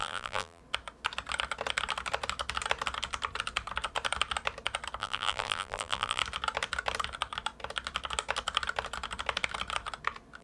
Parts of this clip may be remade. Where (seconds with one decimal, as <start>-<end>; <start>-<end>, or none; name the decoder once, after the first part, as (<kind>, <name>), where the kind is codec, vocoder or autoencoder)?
0.0-0.6 (vocoder, BigVGAN v2); 5.0-6.2